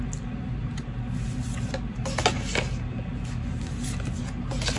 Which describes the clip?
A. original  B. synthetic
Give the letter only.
A